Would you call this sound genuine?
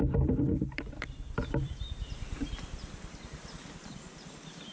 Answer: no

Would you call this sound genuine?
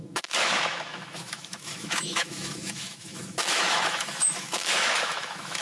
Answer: no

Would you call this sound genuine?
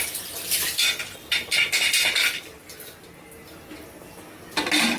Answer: yes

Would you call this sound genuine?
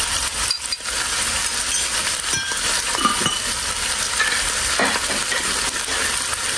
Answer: yes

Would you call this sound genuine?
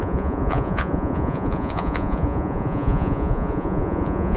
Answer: no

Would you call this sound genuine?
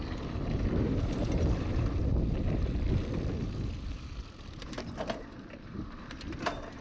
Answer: no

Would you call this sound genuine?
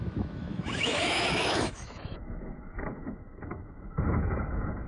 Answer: no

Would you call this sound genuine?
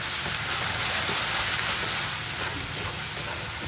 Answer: yes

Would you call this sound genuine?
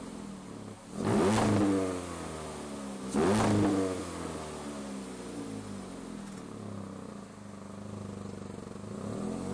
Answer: yes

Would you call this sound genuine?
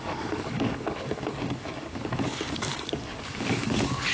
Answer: no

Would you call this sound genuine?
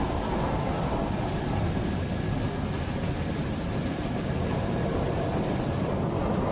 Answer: yes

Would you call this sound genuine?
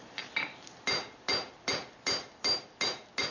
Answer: yes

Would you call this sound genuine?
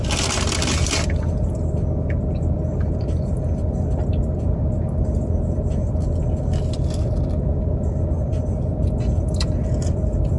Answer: yes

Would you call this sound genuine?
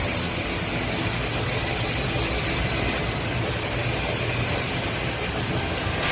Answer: yes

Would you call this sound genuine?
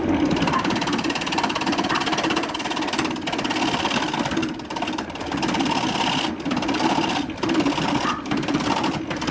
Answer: yes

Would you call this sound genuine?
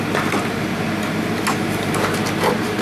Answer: yes